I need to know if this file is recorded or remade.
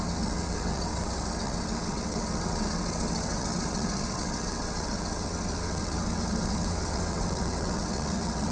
remade